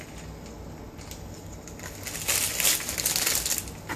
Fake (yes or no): no